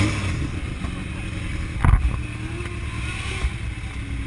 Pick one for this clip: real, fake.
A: real